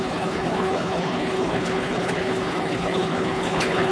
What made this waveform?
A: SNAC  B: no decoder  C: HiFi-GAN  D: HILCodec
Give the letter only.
D